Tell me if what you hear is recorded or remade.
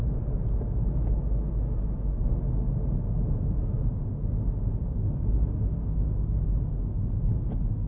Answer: recorded